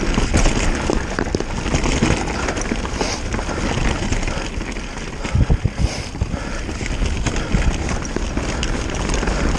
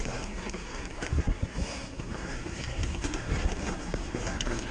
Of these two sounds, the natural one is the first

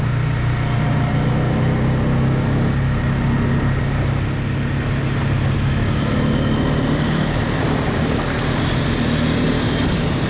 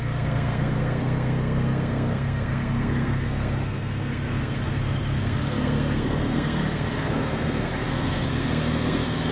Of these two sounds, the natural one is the first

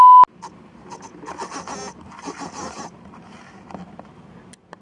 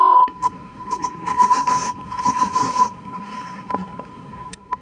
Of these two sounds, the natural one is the first